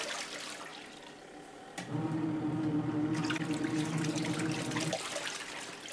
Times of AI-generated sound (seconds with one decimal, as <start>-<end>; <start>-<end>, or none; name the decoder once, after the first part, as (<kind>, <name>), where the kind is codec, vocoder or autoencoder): none